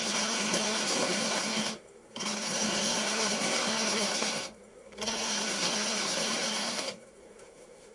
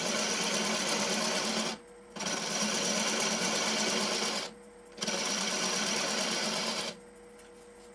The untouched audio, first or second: second